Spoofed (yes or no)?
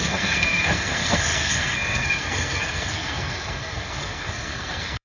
yes